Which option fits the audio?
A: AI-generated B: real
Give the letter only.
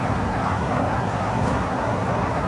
A